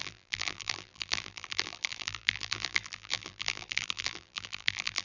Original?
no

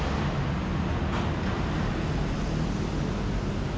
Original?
yes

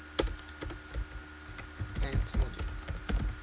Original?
yes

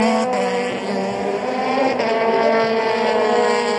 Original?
yes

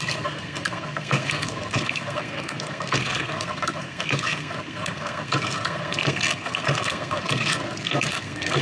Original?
no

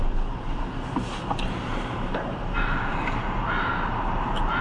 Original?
no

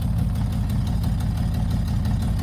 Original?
yes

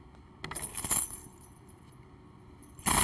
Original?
yes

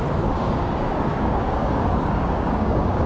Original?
no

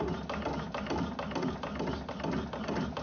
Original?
yes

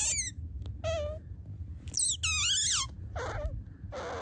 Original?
yes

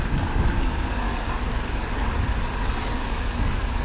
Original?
no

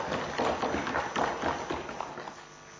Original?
yes